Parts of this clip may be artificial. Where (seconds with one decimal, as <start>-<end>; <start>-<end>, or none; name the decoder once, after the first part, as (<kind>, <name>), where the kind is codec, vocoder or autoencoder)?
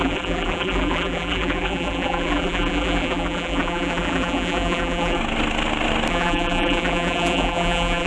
0.0-5.2 (vocoder, BigVGAN v2); 6.1-8.1